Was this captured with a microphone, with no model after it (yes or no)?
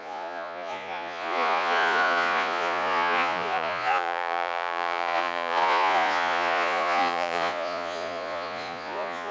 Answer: no